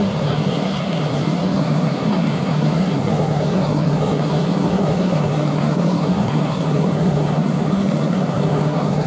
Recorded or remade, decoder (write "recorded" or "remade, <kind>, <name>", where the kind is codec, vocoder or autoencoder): remade, codec, SNAC